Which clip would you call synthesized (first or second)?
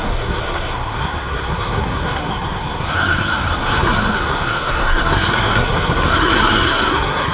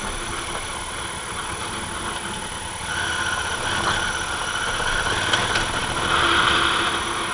first